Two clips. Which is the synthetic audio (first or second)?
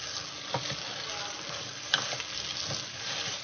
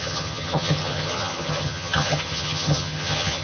second